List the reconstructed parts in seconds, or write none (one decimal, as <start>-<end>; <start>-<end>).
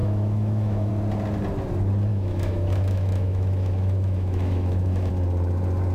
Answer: 0.0-0.9; 2.1-5.1